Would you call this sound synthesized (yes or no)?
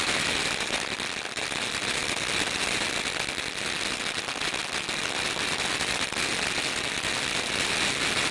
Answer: no